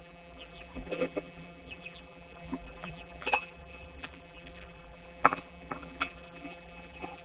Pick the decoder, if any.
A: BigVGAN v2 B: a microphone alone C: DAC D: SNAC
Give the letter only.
A